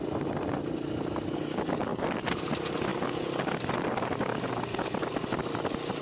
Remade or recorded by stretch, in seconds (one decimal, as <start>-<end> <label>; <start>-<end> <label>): 0.0-1.9 recorded; 1.9-2.5 remade; 2.5-6.0 recorded